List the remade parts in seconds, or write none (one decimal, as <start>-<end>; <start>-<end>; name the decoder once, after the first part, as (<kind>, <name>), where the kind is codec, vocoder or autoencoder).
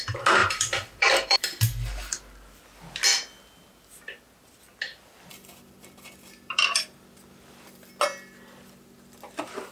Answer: 0.4-2.2 (vocoder, BigVGAN v2); 4.9-7.9